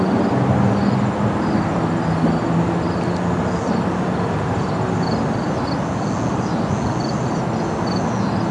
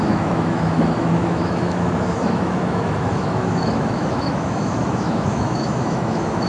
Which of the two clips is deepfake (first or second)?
second